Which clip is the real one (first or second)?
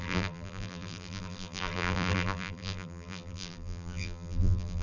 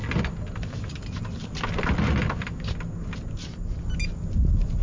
second